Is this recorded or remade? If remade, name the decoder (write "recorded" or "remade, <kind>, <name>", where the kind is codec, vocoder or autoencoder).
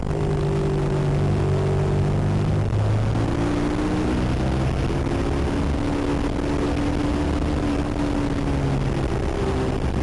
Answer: recorded